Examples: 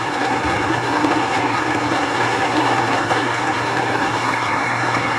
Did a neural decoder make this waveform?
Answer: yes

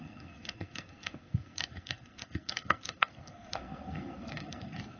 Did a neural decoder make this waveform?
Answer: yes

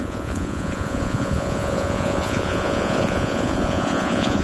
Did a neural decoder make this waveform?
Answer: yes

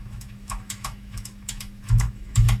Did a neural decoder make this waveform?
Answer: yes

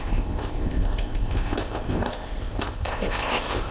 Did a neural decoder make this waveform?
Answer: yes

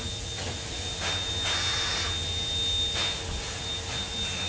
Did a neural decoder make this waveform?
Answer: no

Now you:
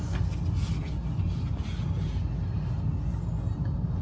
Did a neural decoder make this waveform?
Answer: no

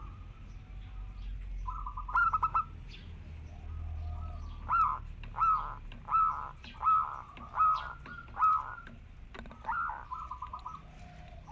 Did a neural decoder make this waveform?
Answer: no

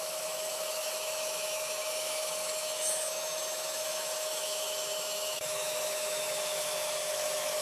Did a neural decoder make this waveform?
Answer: yes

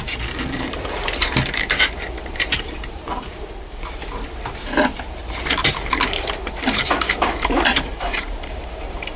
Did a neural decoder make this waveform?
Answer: yes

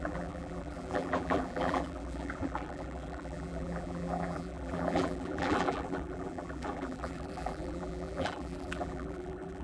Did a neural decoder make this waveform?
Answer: yes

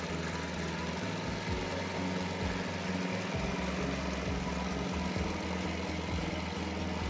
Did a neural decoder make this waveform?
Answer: no